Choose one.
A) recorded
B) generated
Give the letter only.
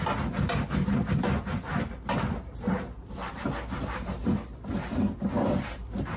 A